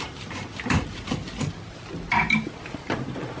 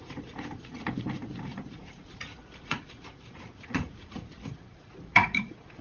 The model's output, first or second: second